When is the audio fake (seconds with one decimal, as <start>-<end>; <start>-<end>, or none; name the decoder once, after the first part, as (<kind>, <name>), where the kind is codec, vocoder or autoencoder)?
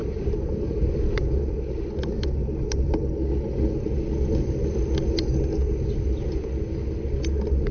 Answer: 0.0-3.0 (vocoder, BigVGAN v2)